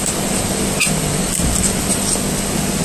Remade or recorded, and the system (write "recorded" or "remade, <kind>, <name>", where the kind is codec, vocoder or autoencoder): recorded